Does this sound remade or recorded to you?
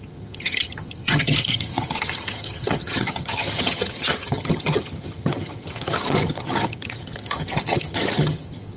remade